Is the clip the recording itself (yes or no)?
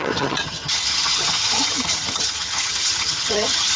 no